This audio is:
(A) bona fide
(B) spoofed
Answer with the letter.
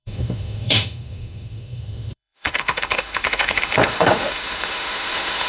B